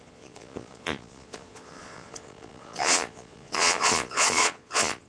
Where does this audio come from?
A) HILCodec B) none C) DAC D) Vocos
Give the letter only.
D